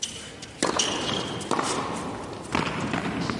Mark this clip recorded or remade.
recorded